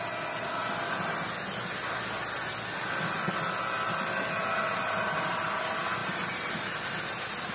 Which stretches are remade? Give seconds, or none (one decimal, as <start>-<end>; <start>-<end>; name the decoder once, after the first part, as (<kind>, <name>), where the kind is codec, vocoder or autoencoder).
none